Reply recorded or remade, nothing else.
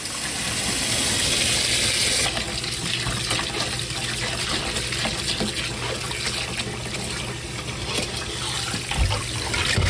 recorded